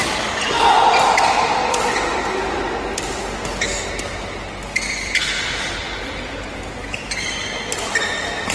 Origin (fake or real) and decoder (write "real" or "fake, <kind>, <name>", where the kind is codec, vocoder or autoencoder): real